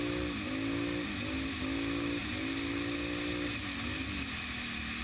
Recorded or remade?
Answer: recorded